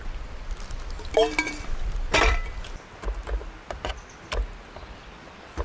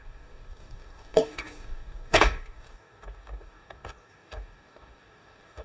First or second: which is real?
first